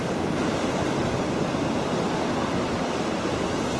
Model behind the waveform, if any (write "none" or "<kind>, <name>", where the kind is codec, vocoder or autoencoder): none